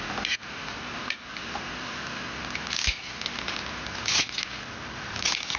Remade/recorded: recorded